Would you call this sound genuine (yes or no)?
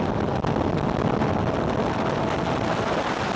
yes